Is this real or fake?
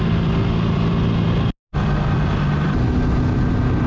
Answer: real